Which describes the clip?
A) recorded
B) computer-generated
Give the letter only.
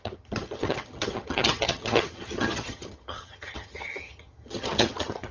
B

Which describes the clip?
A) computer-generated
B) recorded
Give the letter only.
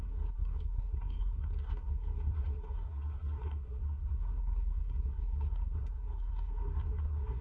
A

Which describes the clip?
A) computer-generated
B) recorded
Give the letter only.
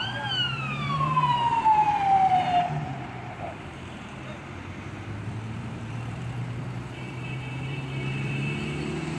A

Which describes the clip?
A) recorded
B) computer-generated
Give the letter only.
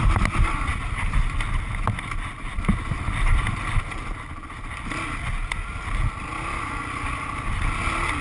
A